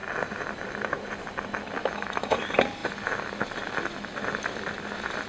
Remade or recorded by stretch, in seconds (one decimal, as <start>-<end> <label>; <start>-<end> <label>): 0.0-1.8 recorded; 1.8-2.4 remade; 2.4-5.3 recorded